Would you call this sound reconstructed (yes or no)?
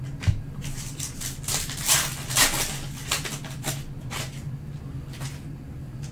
no